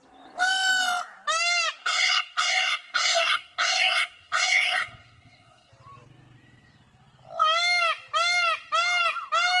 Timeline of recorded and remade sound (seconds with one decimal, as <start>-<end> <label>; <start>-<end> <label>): 0.0-1.8 recorded; 1.8-5.7 remade; 5.7-9.6 recorded